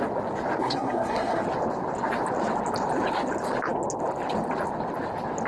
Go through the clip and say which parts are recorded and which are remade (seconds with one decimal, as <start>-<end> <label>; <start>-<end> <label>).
0.0-0.6 recorded; 0.6-1.4 remade; 1.4-5.5 recorded